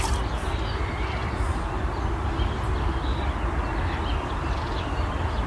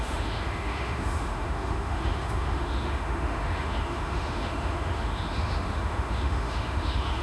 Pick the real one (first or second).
first